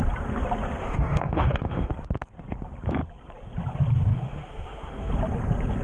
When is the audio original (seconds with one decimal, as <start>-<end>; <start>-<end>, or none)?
0.0-0.8; 1.9-4.1; 5.1-5.8